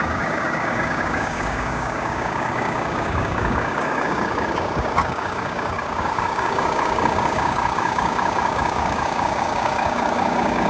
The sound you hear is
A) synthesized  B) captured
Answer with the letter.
A